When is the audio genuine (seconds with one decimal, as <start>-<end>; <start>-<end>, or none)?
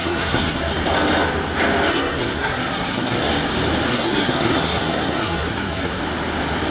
0.7-1.9; 3.3-3.9; 6.0-6.7